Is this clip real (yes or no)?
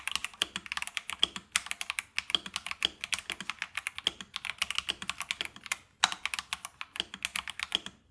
yes